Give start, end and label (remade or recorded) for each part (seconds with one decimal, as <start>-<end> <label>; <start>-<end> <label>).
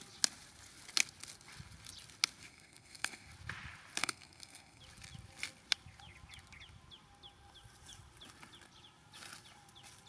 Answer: 0.0-2.5 recorded; 2.5-3.3 remade; 3.3-4.0 recorded; 4.0-4.8 remade; 4.8-10.1 recorded